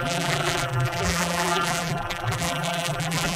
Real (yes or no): no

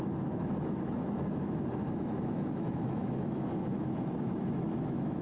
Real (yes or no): no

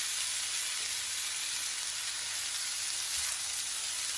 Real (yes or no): yes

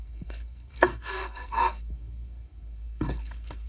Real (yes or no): no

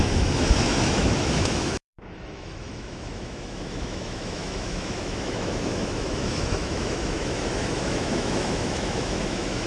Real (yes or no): no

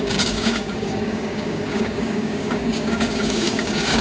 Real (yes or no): no